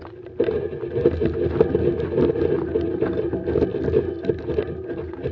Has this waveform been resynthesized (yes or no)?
no